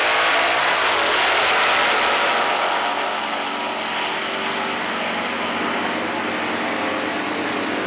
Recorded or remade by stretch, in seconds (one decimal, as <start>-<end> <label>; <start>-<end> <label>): 0.0-7.9 recorded